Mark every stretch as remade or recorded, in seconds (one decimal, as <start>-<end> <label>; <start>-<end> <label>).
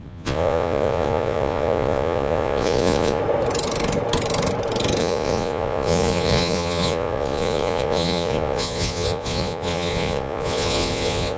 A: 0.0-3.2 remade; 3.2-5.0 recorded; 5.0-11.4 remade